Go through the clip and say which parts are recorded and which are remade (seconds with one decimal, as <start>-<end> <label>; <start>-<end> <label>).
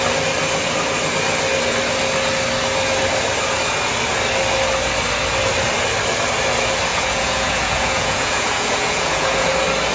0.0-6.9 recorded; 6.9-9.5 remade; 9.5-9.9 recorded